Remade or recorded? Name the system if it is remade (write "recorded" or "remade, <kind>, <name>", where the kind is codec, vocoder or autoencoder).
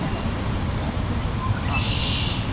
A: remade, vocoder, BigVGAN v2